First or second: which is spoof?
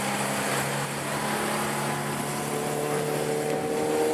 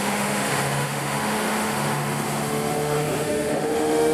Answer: second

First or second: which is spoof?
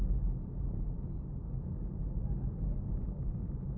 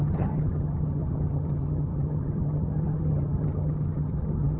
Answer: second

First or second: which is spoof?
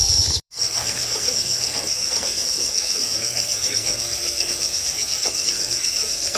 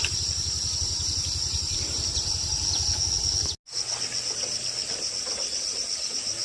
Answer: first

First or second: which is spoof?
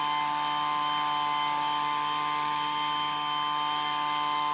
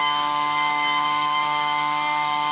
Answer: second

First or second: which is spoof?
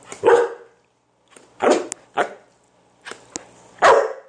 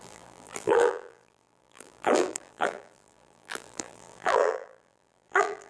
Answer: second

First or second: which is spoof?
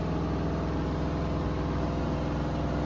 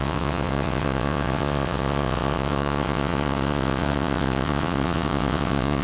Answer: second